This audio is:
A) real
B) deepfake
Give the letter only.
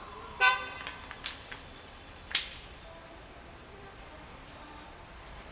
B